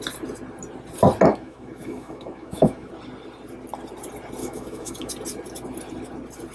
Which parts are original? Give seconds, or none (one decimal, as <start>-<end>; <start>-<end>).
0.0-1.3; 2.9-4.4; 5.1-6.5